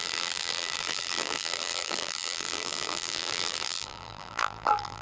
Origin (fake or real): fake